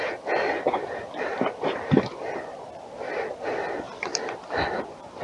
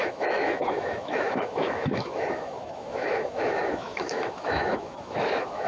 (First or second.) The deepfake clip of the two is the second